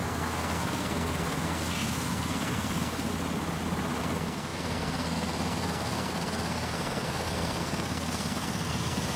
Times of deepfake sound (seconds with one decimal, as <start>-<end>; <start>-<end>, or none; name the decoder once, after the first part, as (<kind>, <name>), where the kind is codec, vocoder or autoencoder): 0.0-3.1 (codec, SNAC); 4.0-9.2